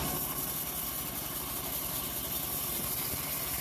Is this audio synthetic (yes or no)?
no